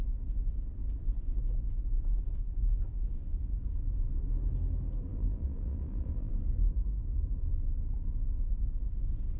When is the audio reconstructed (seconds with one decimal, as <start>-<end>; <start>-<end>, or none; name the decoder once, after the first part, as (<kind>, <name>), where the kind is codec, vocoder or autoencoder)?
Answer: 5.1-6.3 (vocoder, BigVGAN v2)